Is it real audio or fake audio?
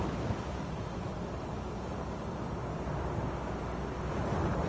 real